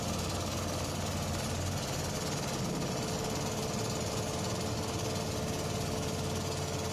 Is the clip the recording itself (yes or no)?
yes